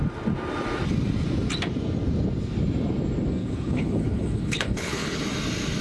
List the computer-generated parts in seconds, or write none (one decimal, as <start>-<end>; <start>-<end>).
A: 3.4-5.2